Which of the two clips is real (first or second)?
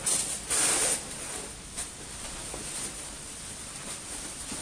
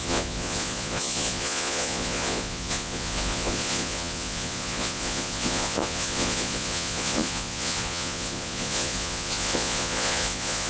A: first